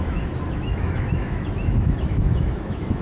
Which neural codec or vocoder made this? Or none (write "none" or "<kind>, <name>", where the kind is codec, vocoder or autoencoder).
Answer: autoencoder, DAC-VAE